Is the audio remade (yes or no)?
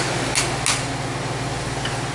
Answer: no